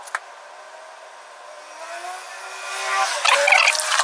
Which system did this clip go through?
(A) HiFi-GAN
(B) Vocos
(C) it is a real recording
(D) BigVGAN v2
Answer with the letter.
C